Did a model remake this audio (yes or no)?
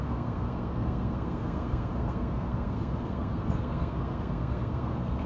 yes